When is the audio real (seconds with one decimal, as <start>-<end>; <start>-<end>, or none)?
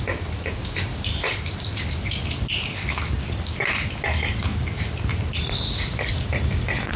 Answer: 0.0-7.0